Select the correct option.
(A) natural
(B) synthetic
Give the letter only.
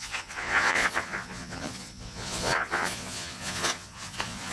B